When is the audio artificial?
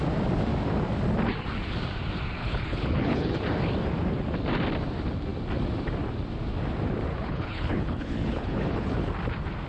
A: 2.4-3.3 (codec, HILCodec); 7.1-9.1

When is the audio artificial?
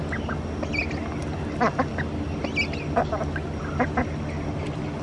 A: none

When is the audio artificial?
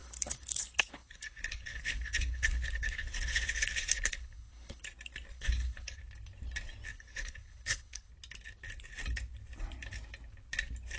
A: 0.0-4.8 (codec, HILCodec); 5.3-6.0; 6.9-8.1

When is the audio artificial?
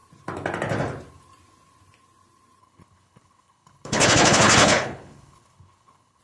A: 2.6-6.2 (codec, HILCodec)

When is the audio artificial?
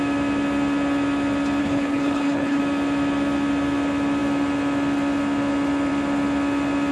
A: 1.6-2.6 (codec, HILCodec)